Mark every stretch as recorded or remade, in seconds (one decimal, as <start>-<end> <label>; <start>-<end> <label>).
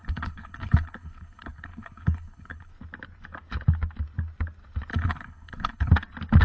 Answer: 0.0-2.7 remade; 2.7-4.9 recorded; 4.9-5.9 remade; 5.9-6.4 recorded